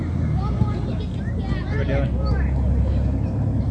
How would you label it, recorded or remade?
recorded